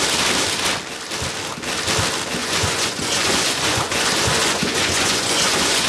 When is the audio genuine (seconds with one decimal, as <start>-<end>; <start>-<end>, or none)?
0.0-2.4